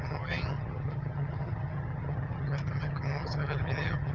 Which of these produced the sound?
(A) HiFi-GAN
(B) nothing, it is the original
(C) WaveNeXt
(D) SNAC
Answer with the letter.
A